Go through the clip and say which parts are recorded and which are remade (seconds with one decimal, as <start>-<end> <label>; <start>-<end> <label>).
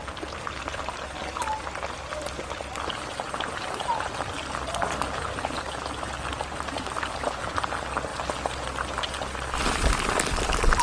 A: 0.0-6.3 recorded; 6.3-7.4 remade; 7.4-10.8 recorded